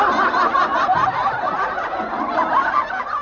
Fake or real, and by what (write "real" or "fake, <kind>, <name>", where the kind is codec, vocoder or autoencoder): real